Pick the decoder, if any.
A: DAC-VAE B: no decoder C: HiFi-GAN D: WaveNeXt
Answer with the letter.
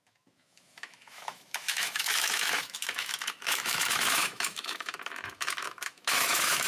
A